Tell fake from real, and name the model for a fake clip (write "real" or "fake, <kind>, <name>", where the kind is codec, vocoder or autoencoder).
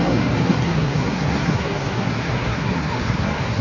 fake, codec, SNAC